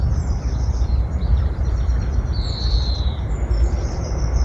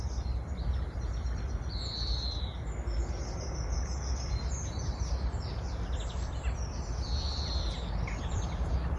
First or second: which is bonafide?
second